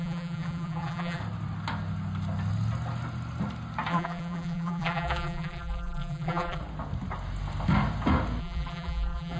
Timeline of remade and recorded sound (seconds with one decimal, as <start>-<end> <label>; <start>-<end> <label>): 0.0-1.2 remade; 1.2-3.9 recorded; 3.9-6.6 remade; 6.6-8.4 recorded; 8.4-9.4 remade